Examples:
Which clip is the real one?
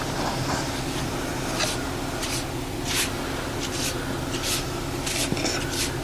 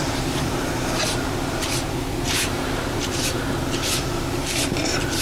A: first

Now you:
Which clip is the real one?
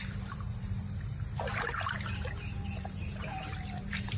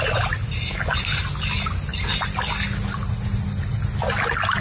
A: second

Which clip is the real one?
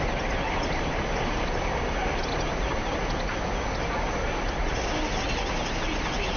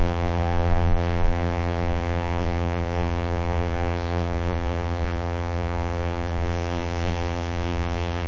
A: first